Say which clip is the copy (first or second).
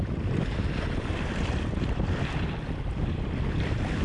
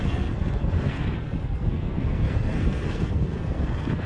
second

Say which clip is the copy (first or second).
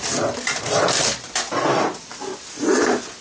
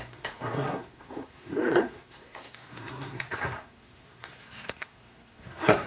second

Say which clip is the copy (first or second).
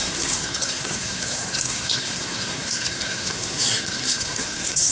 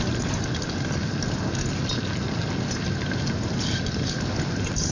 first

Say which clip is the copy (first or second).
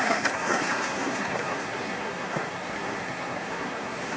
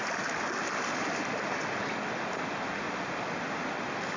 first